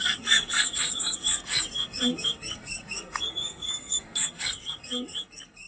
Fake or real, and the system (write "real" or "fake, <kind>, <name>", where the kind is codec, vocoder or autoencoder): fake, codec, SNAC